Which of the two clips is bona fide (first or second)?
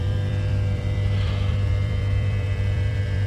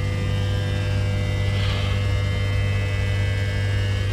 second